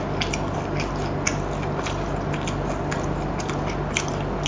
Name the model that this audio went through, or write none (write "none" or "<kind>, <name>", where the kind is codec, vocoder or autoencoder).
none